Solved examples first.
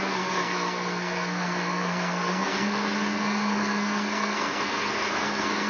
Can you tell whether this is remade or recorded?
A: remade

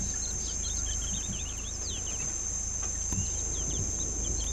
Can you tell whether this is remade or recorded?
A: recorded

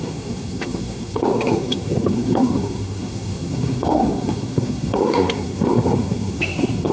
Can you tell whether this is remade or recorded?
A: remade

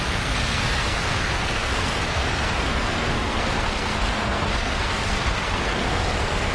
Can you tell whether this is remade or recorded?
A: remade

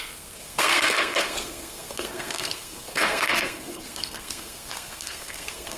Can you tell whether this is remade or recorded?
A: remade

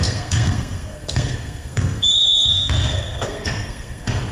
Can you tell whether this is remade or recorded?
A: remade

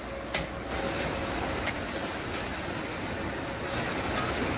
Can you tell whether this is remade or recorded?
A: recorded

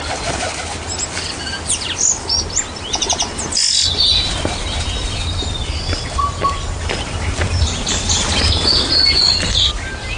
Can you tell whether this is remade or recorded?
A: recorded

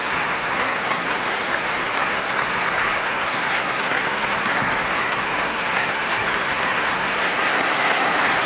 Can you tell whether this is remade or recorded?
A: remade